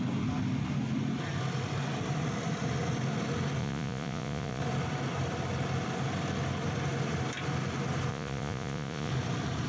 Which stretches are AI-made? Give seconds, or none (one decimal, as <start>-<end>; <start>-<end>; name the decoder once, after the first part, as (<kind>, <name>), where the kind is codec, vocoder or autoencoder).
3.6-4.6 (vocoder, Vocos); 8.1-9.1